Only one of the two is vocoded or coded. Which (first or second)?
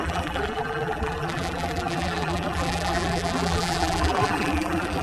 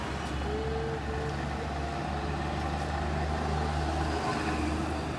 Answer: first